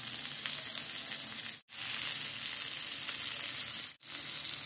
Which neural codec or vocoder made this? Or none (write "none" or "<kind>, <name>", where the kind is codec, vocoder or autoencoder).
none